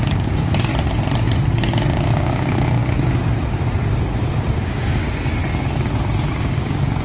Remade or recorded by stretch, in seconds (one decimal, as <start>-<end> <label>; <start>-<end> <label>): 0.0-0.7 remade; 0.7-1.5 recorded; 1.5-2.8 remade; 2.8-4.5 recorded; 4.5-5.4 remade; 5.4-6.3 recorded; 6.3-7.0 remade